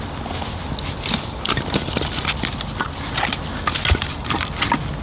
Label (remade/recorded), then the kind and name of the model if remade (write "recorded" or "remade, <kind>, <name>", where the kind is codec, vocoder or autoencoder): recorded